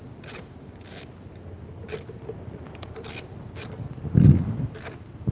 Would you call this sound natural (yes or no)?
yes